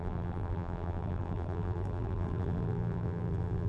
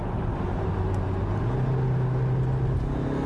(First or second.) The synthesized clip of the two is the first